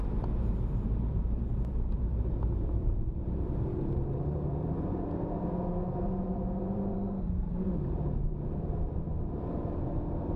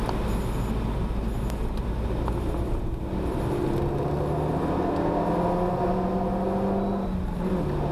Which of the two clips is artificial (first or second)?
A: first